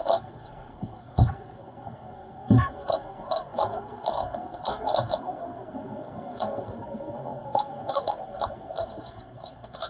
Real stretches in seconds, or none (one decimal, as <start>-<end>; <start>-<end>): none